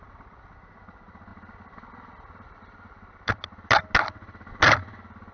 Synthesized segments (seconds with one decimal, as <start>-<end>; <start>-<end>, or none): none